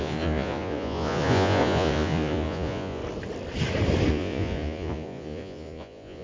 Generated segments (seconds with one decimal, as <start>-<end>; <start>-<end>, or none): 0.0-3.0; 4.1-6.2